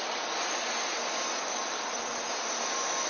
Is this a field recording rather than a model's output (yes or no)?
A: yes